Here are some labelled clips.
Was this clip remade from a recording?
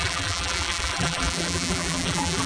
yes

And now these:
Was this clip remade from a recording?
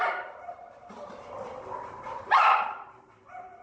no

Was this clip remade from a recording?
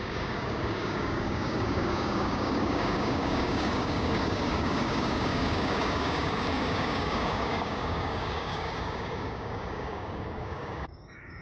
yes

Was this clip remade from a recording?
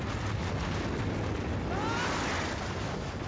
no